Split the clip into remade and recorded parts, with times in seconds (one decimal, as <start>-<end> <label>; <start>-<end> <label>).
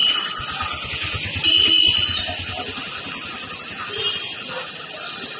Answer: 0.0-5.4 recorded